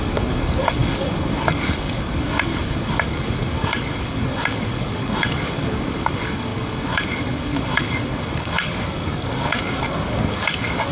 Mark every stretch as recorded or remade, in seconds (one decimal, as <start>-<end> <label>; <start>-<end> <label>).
0.0-10.9 remade